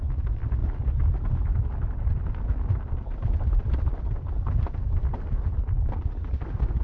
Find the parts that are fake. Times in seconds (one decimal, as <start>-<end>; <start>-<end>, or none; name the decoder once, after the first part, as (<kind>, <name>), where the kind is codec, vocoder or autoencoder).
none